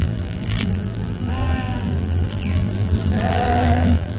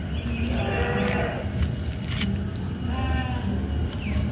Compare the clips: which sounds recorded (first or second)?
second